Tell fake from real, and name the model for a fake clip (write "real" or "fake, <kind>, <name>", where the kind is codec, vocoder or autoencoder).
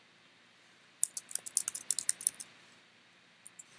real